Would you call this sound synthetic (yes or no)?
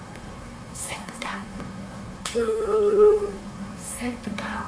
yes